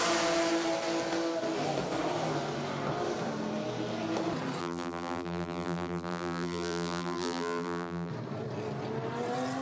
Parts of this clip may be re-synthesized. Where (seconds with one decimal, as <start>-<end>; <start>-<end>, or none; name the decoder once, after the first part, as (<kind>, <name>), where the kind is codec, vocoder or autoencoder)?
4.6-8.1 (vocoder, BigVGAN v2)